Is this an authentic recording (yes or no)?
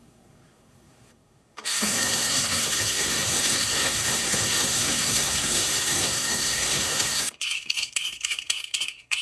no